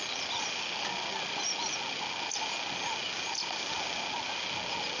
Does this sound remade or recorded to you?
recorded